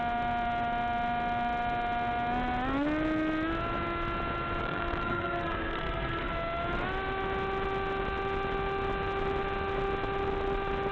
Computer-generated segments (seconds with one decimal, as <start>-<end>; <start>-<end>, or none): 4.6-6.3